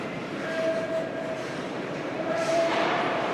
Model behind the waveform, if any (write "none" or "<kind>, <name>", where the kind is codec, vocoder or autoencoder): vocoder, BigVGAN v2